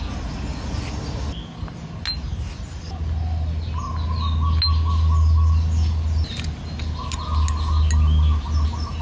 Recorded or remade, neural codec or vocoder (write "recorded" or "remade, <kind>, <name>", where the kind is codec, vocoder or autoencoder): recorded